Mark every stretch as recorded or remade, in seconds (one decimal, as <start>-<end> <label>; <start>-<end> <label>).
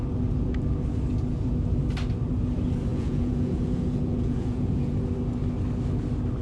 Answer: 0.0-2.9 recorded; 2.9-4.9 remade; 4.9-6.4 recorded